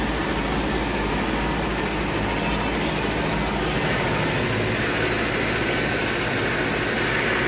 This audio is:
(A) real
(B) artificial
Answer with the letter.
A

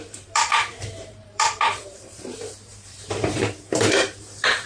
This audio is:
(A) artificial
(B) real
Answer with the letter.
A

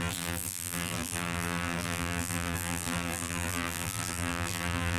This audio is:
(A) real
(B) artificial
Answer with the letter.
B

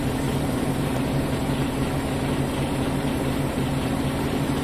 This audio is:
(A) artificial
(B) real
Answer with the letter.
A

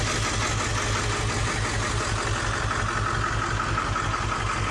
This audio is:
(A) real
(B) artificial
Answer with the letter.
A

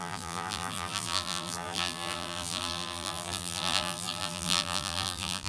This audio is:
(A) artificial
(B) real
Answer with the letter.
A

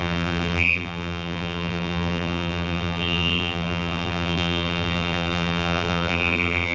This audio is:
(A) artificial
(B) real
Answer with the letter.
A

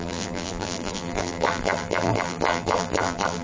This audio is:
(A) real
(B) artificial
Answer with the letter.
B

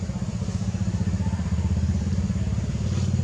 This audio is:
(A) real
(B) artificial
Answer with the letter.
B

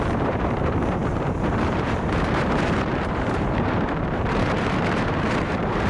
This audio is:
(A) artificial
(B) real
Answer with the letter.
A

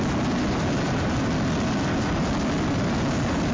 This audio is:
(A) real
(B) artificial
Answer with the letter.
A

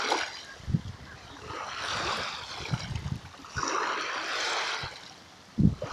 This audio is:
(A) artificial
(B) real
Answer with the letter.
B